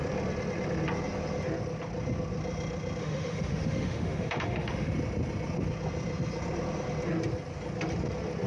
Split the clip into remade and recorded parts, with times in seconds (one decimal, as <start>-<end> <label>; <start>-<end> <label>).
0.0-3.0 recorded; 3.0-4.9 remade; 4.9-8.5 recorded